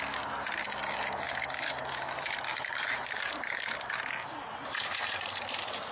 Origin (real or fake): real